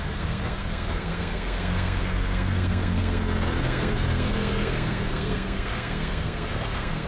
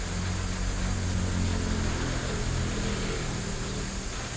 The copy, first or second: first